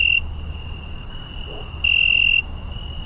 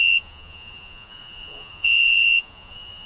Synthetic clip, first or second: second